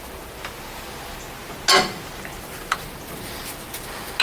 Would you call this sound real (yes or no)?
yes